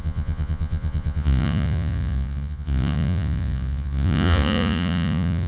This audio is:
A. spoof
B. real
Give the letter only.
A